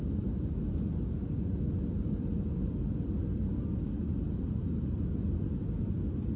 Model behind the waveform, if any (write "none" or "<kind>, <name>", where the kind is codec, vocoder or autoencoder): none